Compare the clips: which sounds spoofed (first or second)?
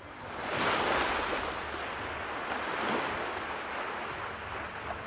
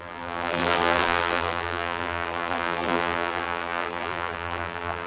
second